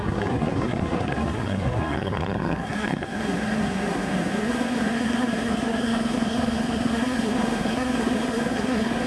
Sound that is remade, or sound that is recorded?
remade